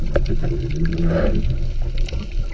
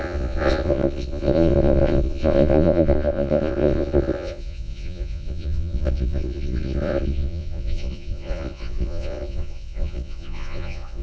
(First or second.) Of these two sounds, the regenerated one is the second